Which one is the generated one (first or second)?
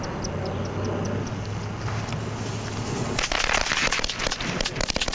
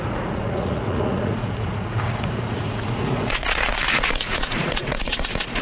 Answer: second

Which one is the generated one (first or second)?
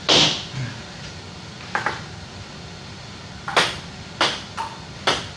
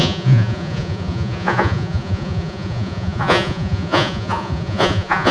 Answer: second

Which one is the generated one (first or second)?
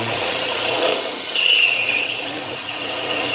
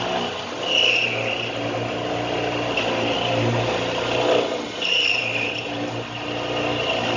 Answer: first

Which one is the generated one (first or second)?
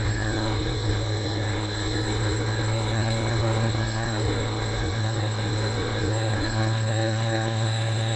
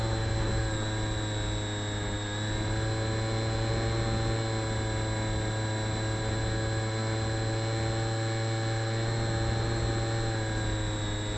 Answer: first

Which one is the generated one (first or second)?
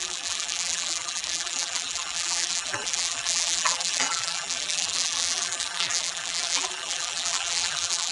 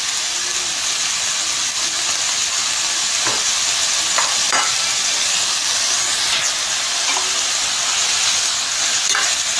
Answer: first